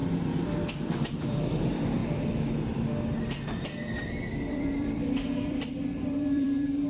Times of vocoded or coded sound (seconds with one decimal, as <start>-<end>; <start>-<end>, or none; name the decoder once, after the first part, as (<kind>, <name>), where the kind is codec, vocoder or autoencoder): 0.9-2.0 (vocoder, BigVGAN v2); 4.5-6.9